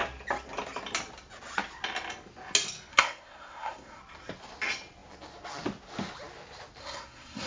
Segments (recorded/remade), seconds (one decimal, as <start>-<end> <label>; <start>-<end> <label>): 0.0-2.9 recorded; 2.9-4.0 remade; 4.0-6.8 recorded; 6.8-7.5 remade